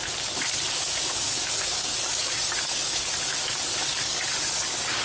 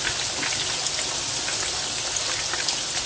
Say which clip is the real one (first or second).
second